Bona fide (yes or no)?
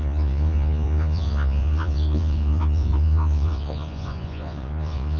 no